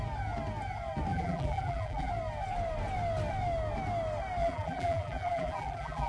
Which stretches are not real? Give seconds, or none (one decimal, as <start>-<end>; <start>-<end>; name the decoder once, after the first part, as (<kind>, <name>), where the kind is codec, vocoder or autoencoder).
1.1-2.1 (vocoder, BigVGAN v2); 4.4-6.1